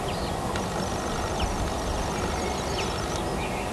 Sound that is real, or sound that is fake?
real